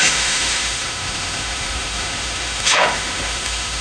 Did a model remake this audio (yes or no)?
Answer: yes